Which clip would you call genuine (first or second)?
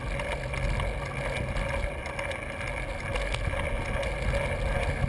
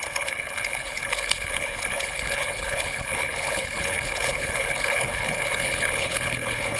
first